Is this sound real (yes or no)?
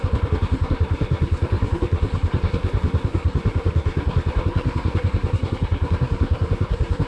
no